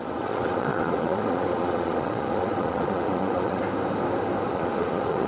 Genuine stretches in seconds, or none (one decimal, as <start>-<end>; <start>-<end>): 3.6-4.5